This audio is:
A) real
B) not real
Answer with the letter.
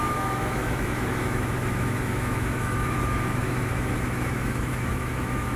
B